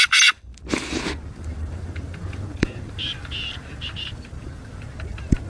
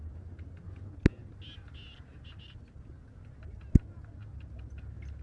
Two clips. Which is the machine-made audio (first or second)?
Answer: first